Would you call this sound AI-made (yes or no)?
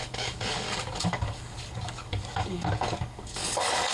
yes